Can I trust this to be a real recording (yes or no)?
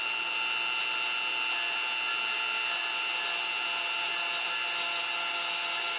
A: yes